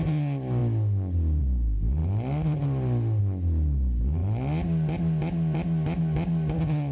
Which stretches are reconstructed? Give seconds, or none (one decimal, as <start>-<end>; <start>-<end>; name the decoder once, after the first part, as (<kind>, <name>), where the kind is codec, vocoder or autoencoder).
none